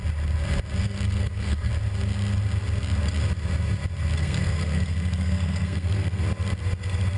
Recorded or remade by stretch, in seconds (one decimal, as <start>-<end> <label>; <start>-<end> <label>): 0.0-0.8 recorded; 0.8-1.7 remade; 1.7-4.2 recorded; 4.2-6.2 remade; 6.2-7.2 recorded